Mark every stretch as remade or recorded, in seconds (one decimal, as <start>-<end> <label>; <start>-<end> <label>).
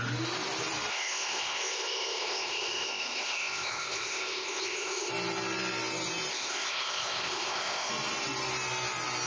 0.0-0.9 recorded; 0.9-5.1 remade; 5.1-6.3 recorded; 6.3-7.9 remade; 7.9-9.3 recorded